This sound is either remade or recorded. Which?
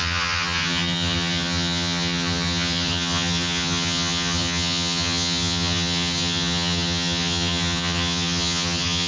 remade